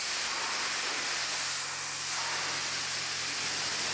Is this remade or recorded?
recorded